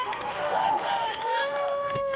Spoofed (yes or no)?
yes